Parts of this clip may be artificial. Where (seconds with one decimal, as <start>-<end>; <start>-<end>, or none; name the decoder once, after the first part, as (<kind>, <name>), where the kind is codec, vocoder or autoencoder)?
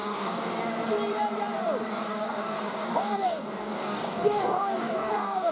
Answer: 0.0-0.5 (codec, DAC); 2.0-5.5